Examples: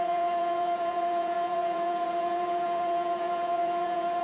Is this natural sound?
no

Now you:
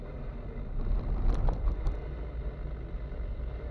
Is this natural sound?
yes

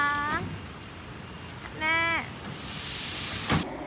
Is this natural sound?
yes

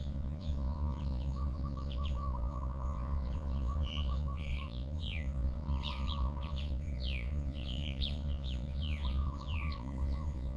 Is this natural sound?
no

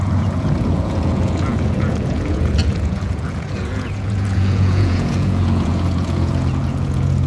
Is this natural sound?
no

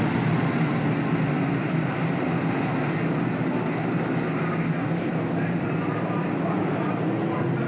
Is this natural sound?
yes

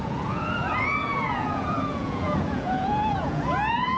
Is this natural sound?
no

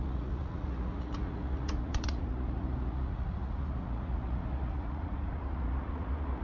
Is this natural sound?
no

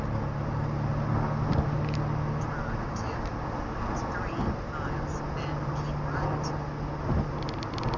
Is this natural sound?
yes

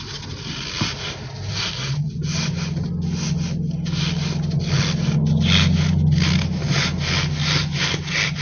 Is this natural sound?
yes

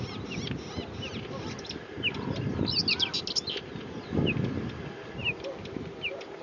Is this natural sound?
yes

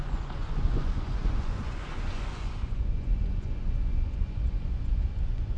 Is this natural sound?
no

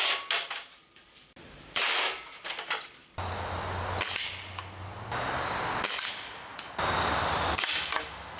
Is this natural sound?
yes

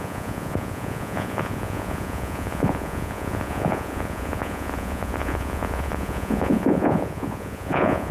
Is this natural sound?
no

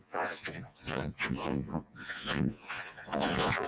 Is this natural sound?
no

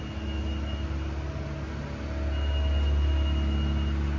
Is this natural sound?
yes